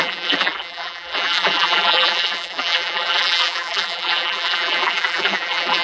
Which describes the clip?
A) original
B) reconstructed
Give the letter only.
B